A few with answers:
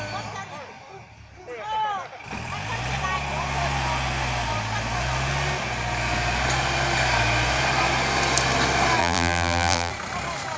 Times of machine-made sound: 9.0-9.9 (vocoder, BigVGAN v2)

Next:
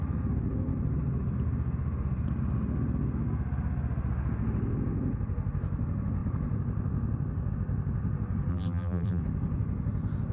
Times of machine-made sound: 8.5-9.2 (vocoder, BigVGAN v2)

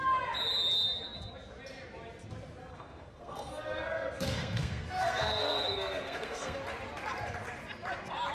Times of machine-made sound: 2.6-6.6 (codec, SNAC)

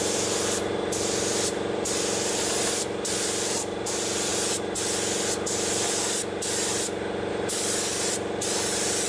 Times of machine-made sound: 0.0-4.3 (vocoder, BigVGAN v2); 7.3-9.1